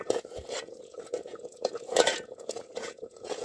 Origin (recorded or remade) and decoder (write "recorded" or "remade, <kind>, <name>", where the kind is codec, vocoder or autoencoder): remade, vocoder, Vocos